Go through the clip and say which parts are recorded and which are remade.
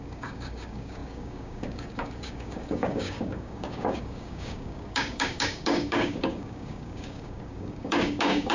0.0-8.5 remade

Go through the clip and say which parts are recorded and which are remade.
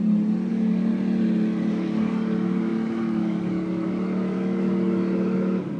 0.0-0.5 recorded; 0.5-0.9 remade; 0.9-1.7 recorded; 1.7-5.8 remade